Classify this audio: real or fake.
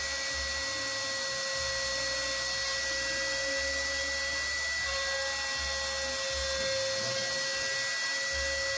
real